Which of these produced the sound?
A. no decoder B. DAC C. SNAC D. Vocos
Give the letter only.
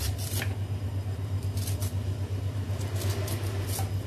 A